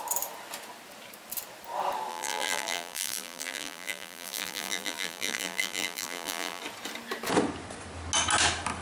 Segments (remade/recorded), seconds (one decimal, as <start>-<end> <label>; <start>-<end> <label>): 0.0-2.1 recorded; 2.1-6.6 remade; 6.6-8.8 recorded